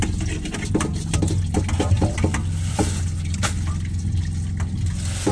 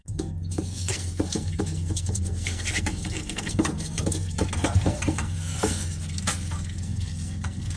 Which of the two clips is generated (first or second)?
second